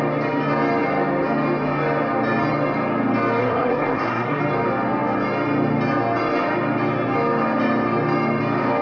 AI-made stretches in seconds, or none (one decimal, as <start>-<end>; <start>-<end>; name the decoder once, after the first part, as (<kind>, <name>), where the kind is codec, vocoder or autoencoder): 3.4-4.4 (codec, SNAC)